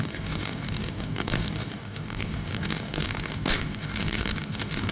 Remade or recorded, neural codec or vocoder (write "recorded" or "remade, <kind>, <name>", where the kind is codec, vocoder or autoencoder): remade, codec, DAC